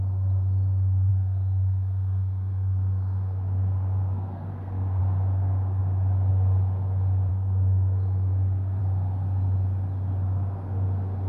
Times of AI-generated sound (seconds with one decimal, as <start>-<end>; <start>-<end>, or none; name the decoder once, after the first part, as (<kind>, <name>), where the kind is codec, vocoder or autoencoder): 1.1-5.0 (codec, SNAC); 7.3-8.8

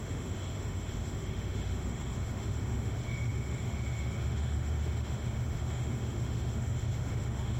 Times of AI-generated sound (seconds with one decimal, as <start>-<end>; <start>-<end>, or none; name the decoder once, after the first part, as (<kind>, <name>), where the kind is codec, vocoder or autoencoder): 0.0-7.6 (autoencoder, DAC-VAE)

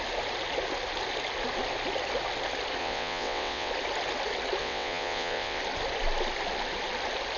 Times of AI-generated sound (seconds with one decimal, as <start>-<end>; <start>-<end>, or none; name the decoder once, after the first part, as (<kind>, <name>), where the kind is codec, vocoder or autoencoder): 2.8-3.7 (vocoder, WaveNeXt); 4.6-5.6

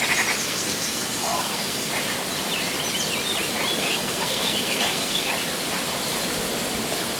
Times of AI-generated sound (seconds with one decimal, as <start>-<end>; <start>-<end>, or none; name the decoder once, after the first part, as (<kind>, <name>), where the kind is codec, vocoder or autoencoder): 0.4-1.9 (codec, SNAC); 3.8-5.3

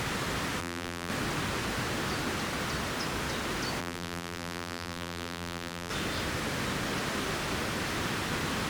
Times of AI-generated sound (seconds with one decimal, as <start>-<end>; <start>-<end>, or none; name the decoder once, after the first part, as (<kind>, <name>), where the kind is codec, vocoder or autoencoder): 0.6-1.1 (vocoder, BigVGAN v2); 3.8-5.9

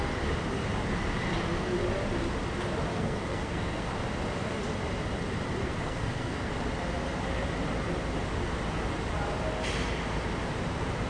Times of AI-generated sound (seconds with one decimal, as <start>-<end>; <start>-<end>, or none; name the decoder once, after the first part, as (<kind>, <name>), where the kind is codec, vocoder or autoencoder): 2.9-3.9 (codec, SNAC); 5.6-6.5